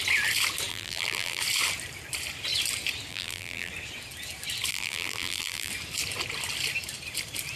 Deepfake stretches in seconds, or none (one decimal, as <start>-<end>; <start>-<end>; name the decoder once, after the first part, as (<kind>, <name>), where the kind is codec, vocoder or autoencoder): 0.7-1.4 (vocoder, BigVGAN v2); 3.1-3.7; 4.7-5.7